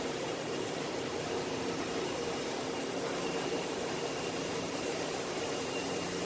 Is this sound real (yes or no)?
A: no